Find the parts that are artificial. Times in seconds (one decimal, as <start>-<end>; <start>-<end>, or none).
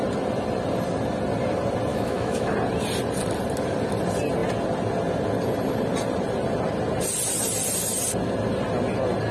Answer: 1.9-2.5